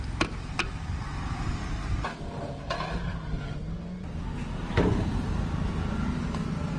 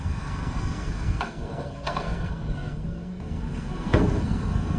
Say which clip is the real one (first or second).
first